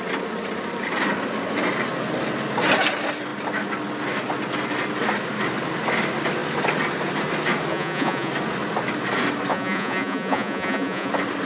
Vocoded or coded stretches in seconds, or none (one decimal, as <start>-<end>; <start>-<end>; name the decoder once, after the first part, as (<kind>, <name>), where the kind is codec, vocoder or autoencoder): 7.7-8.3 (vocoder, Vocos); 9.5-11.1